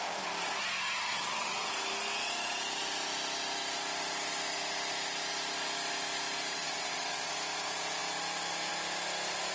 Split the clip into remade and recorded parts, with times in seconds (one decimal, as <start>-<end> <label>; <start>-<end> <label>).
0.0-1.1 recorded; 1.1-1.7 remade; 1.7-6.5 recorded; 6.5-7.3 remade; 7.3-9.5 recorded